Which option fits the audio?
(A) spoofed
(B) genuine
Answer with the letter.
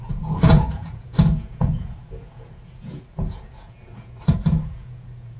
A